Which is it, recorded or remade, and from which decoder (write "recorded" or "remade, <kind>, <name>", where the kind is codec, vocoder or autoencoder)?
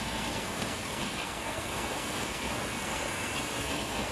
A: remade, codec, SNAC